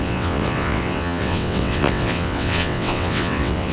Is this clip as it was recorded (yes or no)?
no